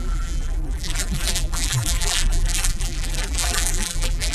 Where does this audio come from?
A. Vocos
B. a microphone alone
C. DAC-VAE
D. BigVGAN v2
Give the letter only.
D